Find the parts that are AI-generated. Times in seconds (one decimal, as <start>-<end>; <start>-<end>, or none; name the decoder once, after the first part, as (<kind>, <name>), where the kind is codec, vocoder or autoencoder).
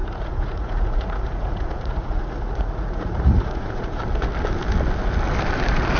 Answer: 0.0-4.0 (vocoder, Vocos)